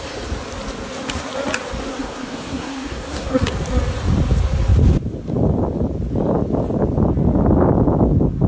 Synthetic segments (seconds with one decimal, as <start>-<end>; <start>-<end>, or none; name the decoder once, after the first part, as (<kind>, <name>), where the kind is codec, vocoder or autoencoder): 1.9-3.5 (codec, SNAC)